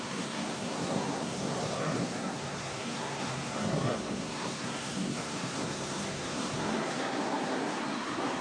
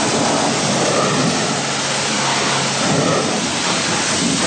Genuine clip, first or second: second